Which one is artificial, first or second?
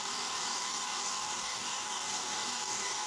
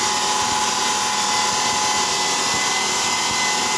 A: first